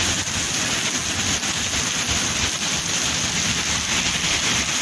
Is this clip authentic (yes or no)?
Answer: yes